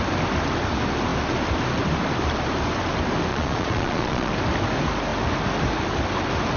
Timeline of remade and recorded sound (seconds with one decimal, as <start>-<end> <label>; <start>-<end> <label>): 0.0-3.3 recorded; 3.3-4.3 remade; 4.3-6.6 recorded